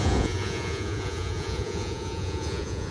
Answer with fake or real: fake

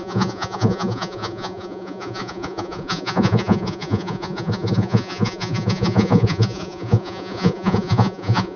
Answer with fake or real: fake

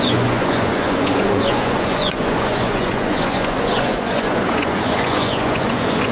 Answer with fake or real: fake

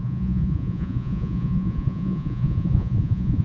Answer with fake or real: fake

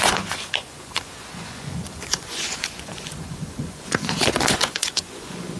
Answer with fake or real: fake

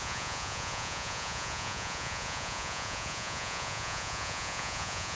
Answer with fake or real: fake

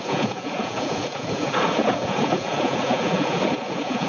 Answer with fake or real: fake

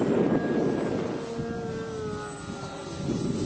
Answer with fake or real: real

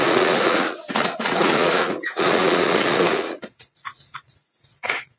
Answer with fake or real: fake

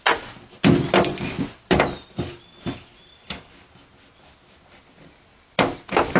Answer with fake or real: real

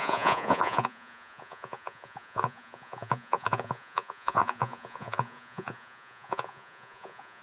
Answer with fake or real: fake